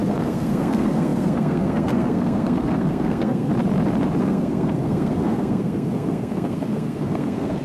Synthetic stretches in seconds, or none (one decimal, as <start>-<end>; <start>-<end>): 0.0-3.5; 4.2-7.6